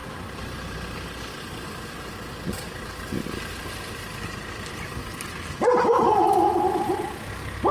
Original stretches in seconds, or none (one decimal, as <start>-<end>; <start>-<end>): 0.0-7.7